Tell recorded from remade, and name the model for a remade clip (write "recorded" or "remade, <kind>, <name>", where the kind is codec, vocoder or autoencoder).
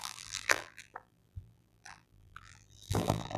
remade, vocoder, BigVGAN v2